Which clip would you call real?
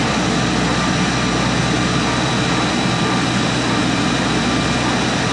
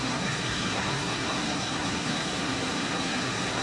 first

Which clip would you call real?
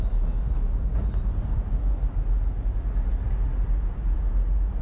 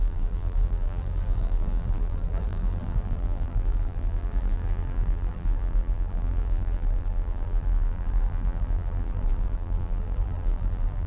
first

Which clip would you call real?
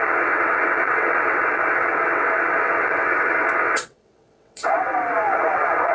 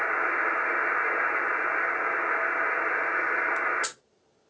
second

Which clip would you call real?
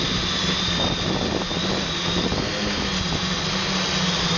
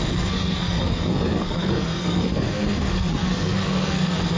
first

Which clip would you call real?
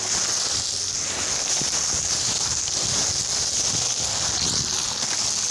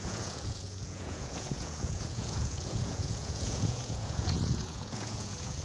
first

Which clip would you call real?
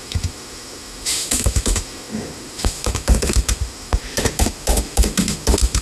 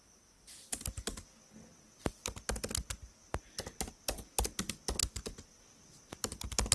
second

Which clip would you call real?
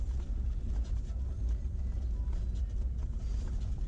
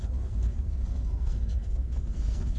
first